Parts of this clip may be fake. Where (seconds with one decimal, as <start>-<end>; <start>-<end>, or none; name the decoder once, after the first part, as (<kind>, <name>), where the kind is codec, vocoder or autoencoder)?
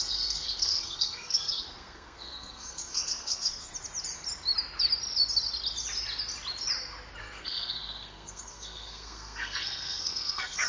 0.0-3.7 (codec, SNAC); 7.2-10.7